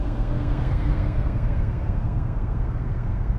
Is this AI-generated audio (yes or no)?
yes